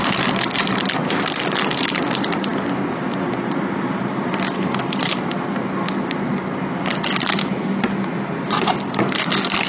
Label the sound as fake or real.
real